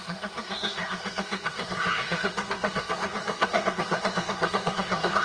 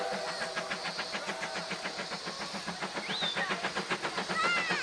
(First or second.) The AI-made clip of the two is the first